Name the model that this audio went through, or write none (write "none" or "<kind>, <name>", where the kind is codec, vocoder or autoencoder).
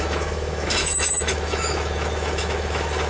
autoencoder, DAC-VAE